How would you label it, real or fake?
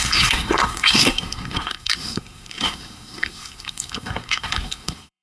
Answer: fake